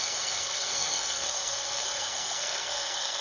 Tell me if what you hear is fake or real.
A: fake